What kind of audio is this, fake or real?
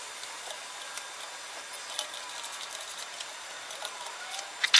real